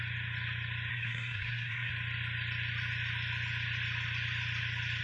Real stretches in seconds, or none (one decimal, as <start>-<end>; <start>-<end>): 0.0-0.9; 1.9-5.0